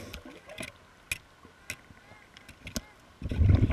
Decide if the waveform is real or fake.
real